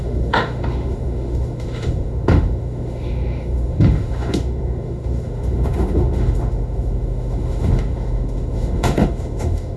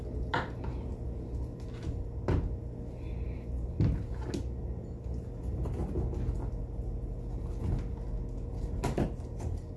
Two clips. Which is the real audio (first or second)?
second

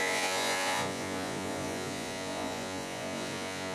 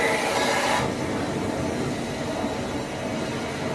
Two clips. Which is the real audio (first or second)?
second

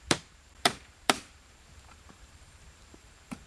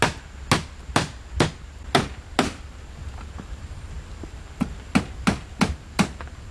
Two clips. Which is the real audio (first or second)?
second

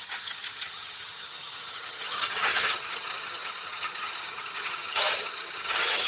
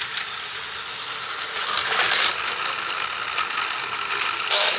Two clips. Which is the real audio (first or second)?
second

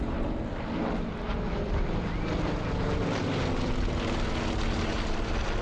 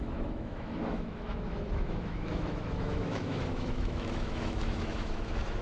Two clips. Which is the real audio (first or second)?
first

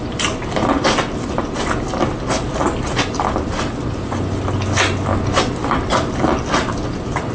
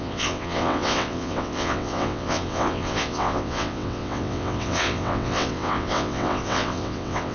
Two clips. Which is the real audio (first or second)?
first